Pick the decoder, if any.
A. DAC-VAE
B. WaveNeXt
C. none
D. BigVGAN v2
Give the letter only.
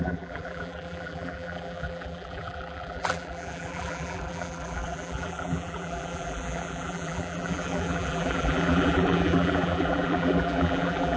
D